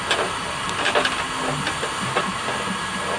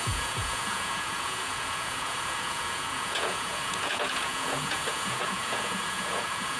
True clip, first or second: first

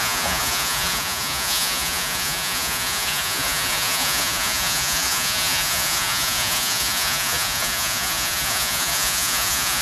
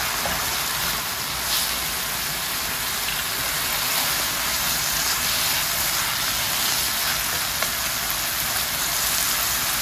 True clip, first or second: second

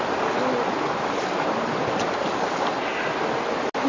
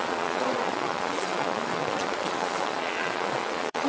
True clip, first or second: first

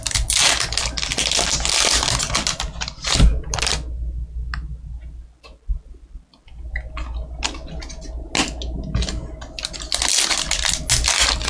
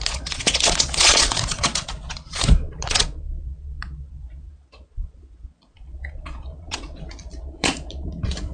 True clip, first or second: first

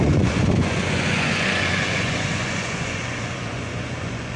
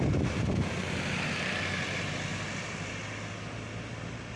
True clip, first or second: second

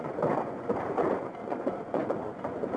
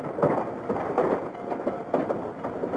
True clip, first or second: second